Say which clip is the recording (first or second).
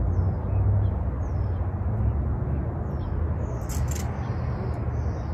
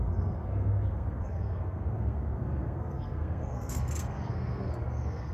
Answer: first